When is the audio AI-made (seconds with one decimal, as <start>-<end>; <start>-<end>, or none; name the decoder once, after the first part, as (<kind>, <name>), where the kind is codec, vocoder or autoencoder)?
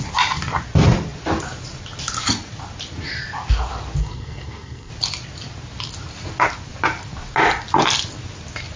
4.0-4.9 (codec, SNAC)